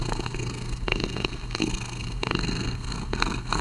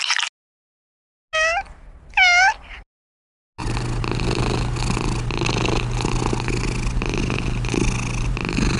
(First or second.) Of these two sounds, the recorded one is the second